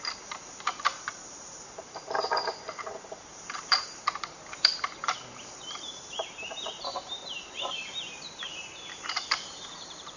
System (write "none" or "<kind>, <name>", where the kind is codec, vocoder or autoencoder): vocoder, BigVGAN v2